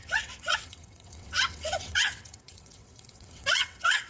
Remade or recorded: remade